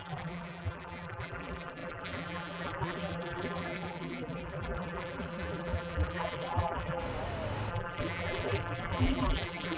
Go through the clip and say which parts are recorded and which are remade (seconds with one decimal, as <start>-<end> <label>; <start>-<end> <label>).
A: 0.0-7.0 remade; 7.0-7.7 recorded; 7.7-9.8 remade